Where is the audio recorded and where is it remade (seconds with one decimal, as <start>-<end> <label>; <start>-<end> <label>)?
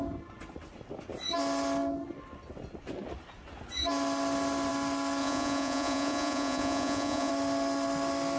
0.0-5.2 recorded; 5.2-7.3 remade; 7.3-8.4 recorded